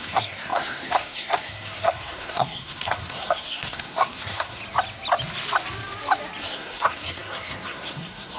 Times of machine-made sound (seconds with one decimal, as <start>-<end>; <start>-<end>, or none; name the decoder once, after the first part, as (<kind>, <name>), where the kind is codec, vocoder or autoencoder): 0.0-4.6 (codec, SNAC); 6.4-8.4